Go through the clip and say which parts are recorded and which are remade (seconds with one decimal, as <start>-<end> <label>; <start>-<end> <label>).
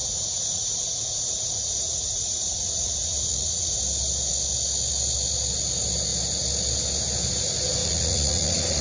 0.0-3.8 remade; 3.8-7.8 recorded; 7.8-8.8 remade